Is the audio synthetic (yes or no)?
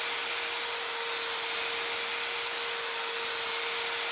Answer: no